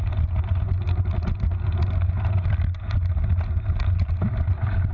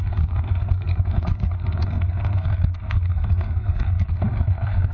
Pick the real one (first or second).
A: first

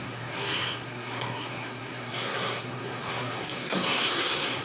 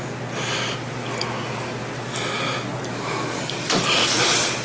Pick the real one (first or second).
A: second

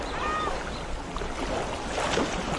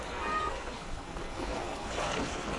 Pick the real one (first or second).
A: first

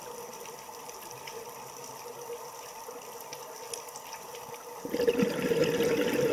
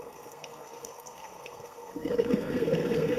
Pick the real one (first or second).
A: first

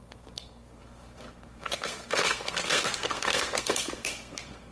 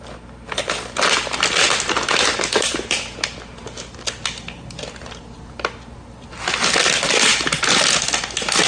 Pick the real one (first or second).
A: second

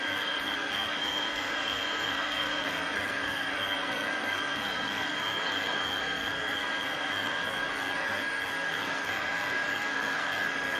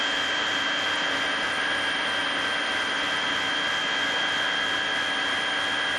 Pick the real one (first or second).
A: second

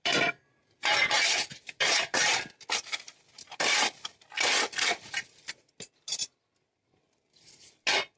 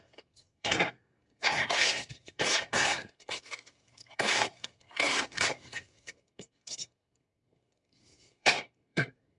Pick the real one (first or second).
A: first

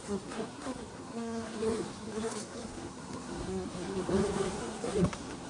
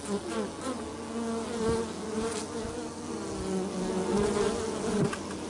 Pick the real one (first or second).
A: second